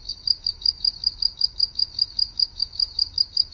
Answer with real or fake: fake